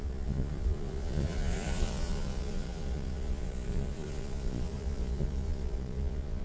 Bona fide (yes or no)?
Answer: no